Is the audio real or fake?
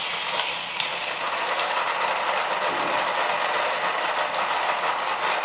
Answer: real